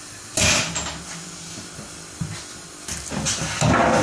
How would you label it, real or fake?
real